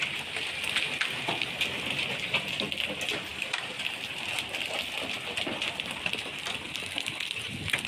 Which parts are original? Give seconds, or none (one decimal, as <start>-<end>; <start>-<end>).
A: 0.0-7.9